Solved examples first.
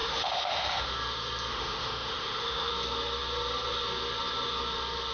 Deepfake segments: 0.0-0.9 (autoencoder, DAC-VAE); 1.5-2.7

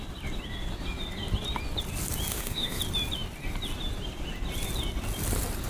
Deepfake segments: 2.3-2.8 (autoencoder, DAC-VAE)

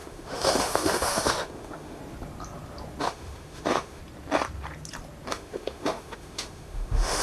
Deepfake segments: 0.0-2.0 (autoencoder, DAC-VAE); 3.0-4.0; 5.3-7.2

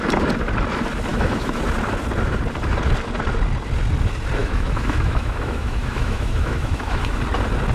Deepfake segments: 1.1-1.6 (autoencoder, DAC-VAE); 4.4-7.2

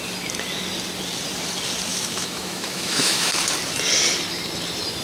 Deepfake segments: 1.9-3.3 (autoencoder, DAC-VAE)

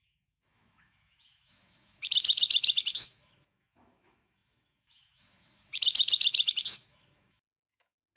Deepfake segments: 0.0-8.2 (autoencoder, DAC-VAE)

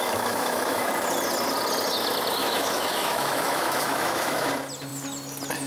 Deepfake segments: 0.0-0.9 (autoencoder, DAC-VAE); 2.4-4.5

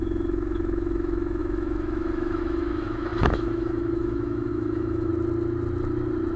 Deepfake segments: 0.0-5.1 (autoencoder, DAC-VAE)